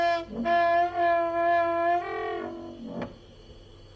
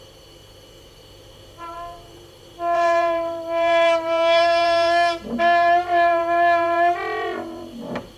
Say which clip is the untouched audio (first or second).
first